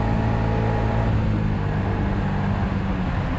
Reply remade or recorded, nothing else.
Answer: recorded